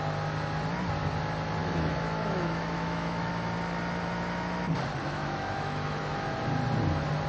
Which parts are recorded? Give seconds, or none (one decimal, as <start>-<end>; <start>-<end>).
0.0-1.6; 3.3-5.0; 6.0-7.3